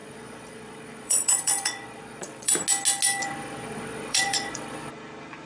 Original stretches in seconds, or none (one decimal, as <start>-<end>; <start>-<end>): 2.5-3.2; 4.9-5.5

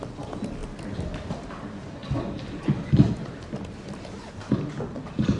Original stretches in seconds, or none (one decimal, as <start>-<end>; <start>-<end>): 0.6-1.3

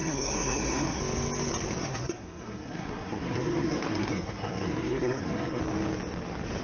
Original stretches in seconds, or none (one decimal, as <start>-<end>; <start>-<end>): 1.0-1.8; 5.6-6.6

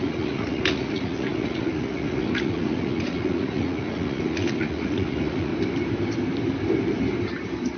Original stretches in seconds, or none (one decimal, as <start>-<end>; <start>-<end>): 5.5-7.8

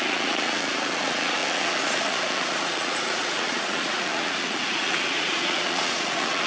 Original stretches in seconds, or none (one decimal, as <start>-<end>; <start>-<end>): none

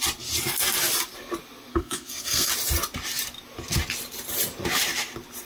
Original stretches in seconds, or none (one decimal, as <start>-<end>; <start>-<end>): 0.0-1.7; 2.5-5.4

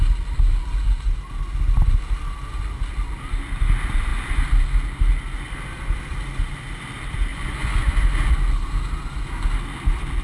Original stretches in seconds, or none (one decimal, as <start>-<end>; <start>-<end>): 0.0-7.3; 7.9-10.2

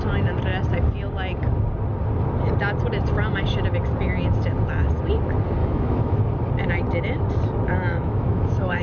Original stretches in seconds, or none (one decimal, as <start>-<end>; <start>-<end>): 0.0-5.6; 6.2-7.9